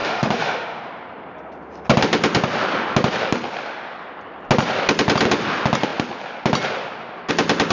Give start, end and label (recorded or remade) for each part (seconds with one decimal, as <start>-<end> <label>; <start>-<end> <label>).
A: 0.0-0.8 remade; 0.8-7.7 recorded